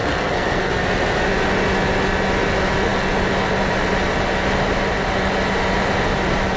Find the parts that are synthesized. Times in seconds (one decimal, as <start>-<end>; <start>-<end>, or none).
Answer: 0.0-0.7